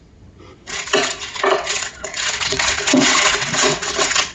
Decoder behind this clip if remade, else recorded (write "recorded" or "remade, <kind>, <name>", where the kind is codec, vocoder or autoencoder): remade, vocoder, WaveNeXt